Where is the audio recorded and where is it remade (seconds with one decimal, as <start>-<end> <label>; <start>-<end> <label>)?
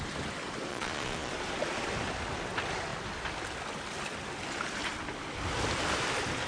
0.0-0.7 recorded; 0.7-1.3 remade; 1.3-6.5 recorded